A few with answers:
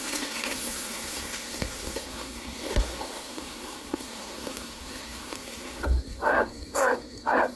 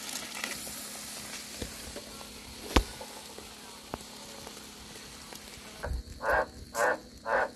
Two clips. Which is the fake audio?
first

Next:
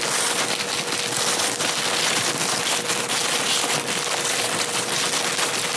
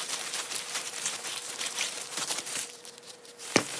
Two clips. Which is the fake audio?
second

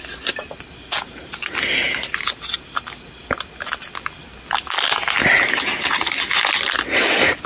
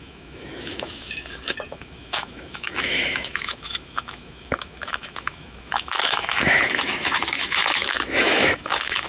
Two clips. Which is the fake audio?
second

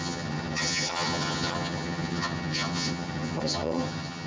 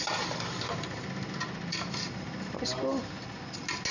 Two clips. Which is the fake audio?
first